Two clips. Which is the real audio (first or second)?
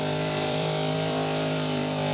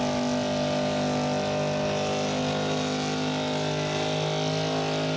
second